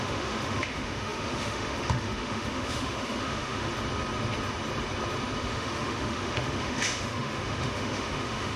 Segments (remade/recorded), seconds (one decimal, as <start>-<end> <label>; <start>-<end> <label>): 0.0-3.7 remade; 3.7-5.4 recorded; 5.4-8.6 remade